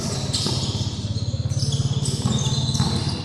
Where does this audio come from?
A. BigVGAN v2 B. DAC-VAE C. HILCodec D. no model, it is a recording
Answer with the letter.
D